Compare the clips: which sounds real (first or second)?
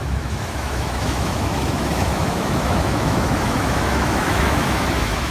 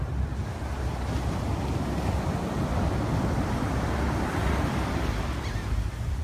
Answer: second